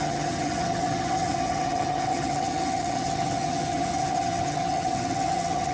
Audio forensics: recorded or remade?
remade